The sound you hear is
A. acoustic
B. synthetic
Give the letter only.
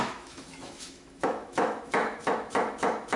B